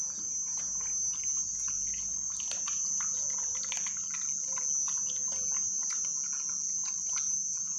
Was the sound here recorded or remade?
recorded